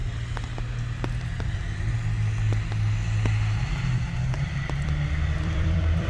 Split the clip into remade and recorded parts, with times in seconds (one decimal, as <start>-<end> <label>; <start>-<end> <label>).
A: 0.0-3.7 recorded; 3.7-6.1 remade